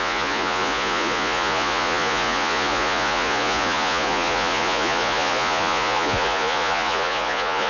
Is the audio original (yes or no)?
no